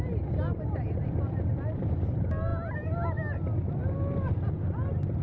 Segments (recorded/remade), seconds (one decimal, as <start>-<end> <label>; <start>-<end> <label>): 0.0-5.2 recorded